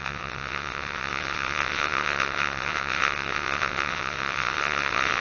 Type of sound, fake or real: fake